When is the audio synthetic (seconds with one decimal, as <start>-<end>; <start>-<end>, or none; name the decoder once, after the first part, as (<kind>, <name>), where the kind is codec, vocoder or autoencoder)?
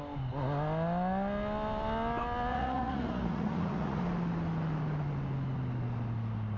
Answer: 2.5-4.0 (vocoder, Vocos)